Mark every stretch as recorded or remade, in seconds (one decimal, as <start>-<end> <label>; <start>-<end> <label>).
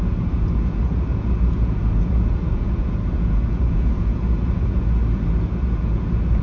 0.0-5.0 remade; 5.0-5.5 recorded; 5.5-6.4 remade